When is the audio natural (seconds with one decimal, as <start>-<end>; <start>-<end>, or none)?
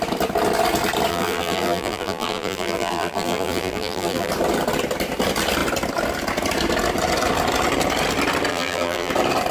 0.0-1.1; 4.3-8.5; 9.1-9.5